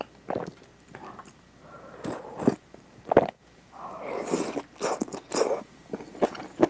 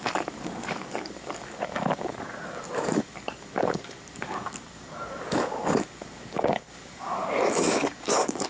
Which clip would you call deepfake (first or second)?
second